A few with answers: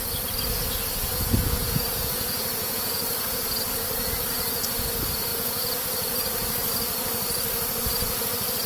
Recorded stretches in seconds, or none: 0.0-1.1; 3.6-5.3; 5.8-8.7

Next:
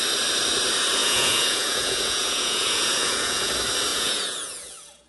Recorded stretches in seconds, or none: 0.0-1.0; 3.5-3.9

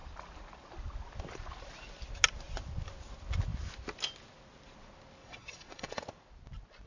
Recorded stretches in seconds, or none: 0.0-5.2; 6.0-6.9

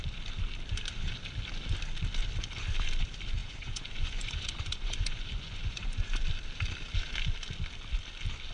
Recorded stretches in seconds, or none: 0.0-3.4; 6.2-8.5